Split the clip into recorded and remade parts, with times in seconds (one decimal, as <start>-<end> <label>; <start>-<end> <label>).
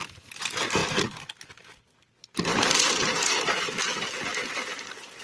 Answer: 0.0-0.8 recorded; 0.8-1.7 remade; 1.7-2.5 recorded; 2.5-3.8 remade; 3.8-4.3 recorded; 4.3-5.2 remade